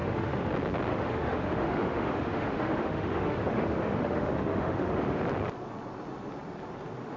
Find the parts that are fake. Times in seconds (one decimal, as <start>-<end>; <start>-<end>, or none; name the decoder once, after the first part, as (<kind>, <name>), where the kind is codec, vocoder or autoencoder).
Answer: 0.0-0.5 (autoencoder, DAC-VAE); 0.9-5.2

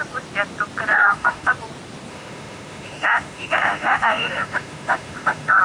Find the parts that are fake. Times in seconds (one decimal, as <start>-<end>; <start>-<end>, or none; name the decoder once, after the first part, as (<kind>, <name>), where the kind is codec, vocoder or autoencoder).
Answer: 0.9-1.5 (autoencoder, DAC-VAE); 2.1-5.6

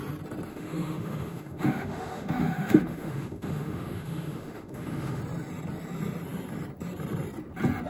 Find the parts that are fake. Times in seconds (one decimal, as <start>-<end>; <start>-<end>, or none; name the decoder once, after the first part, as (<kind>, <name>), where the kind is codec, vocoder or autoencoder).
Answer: 0.5-5.2 (autoencoder, DAC-VAE)